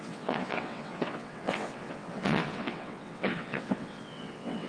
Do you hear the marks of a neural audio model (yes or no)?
yes